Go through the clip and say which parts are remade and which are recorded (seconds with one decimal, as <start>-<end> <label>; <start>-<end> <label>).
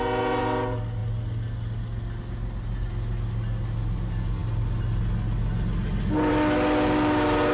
0.0-7.5 recorded